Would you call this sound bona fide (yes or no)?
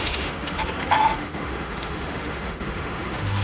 no